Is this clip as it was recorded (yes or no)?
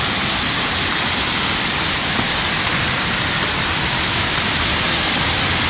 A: yes